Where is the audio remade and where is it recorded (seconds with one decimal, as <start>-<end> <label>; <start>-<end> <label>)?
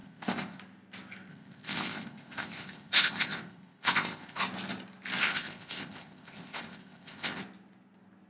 0.0-0.6 remade; 0.6-1.3 recorded; 1.3-4.4 remade; 4.4-5.2 recorded; 5.2-7.4 remade; 7.4-8.3 recorded